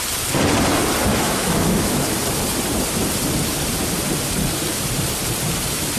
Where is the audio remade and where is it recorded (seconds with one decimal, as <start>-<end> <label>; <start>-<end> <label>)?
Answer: 0.0-1.1 recorded; 1.1-2.0 remade; 2.0-6.0 recorded